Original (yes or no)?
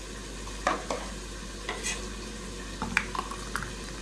yes